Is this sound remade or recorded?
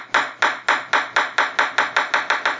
recorded